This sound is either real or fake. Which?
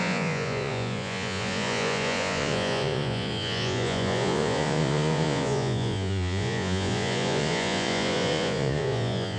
fake